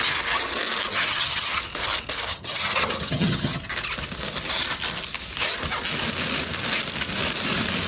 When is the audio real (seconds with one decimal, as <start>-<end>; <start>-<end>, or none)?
0.0-0.9; 1.6-2.3; 3.6-7.9